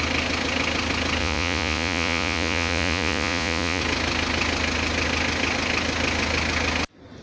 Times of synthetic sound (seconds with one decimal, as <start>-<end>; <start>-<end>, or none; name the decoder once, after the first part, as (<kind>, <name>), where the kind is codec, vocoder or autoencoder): 1.2-3.8 (vocoder, Vocos)